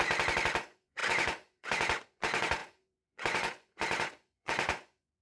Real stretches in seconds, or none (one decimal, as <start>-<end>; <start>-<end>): 0.0-0.6

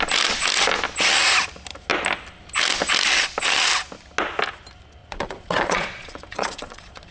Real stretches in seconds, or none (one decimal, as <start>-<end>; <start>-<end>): 0.0-5.0